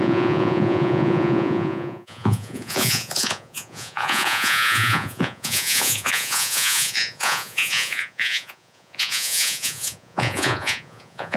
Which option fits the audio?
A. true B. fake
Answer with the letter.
B